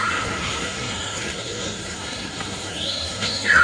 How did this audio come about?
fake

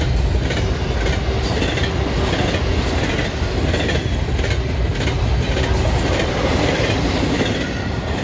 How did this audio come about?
real